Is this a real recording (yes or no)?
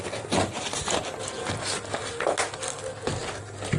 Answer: yes